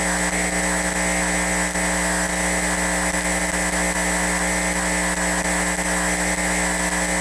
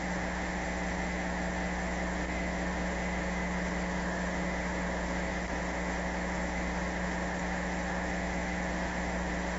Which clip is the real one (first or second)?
first